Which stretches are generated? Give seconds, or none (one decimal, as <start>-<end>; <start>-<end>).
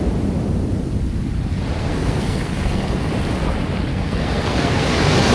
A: 1.8-3.1; 3.9-5.3